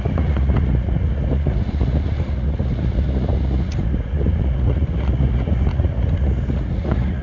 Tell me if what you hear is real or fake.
fake